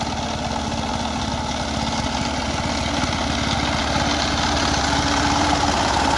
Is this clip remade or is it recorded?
recorded